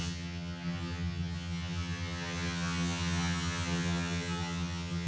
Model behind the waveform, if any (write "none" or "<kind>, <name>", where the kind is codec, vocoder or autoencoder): vocoder, HiFi-GAN